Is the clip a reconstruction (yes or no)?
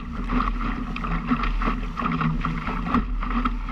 no